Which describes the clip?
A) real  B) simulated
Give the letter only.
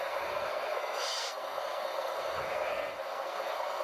B